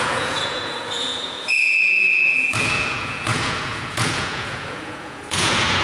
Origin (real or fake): fake